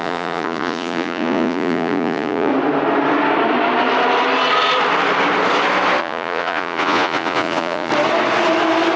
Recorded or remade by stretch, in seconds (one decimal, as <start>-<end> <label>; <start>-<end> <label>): 0.0-2.5 remade; 2.5-6.0 recorded; 6.0-7.9 remade; 7.9-9.0 recorded